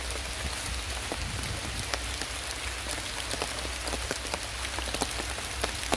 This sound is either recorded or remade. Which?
recorded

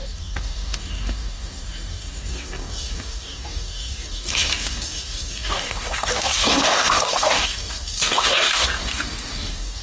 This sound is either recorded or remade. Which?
remade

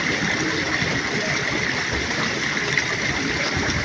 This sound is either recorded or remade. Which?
remade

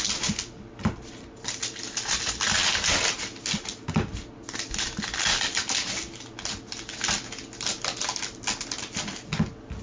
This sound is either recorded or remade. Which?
recorded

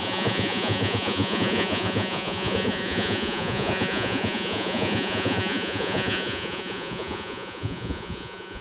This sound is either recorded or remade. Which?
remade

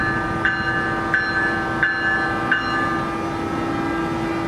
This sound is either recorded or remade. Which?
recorded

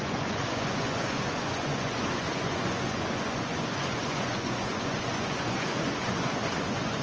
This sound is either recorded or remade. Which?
remade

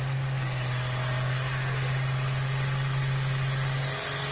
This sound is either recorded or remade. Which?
recorded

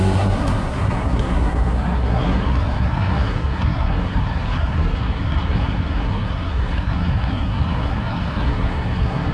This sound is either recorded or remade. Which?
remade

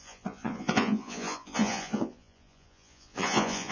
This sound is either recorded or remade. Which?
remade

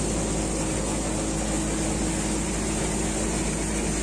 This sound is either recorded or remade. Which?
recorded